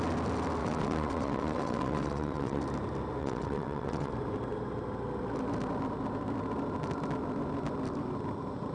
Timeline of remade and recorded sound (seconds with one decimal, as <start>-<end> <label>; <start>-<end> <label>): 0.0-0.6 recorded; 0.6-2.6 remade; 2.6-3.2 recorded; 3.2-4.1 remade; 4.1-8.7 recorded